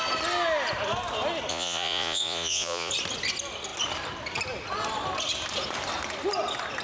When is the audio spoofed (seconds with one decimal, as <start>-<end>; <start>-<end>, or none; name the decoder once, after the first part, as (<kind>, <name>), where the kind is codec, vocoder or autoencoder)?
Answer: 1.5-2.9 (vocoder, Vocos)